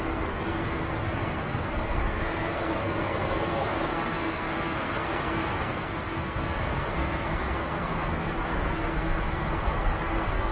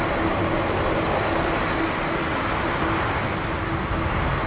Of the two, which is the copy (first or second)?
first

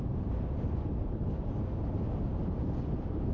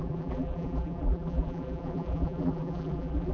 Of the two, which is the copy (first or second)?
second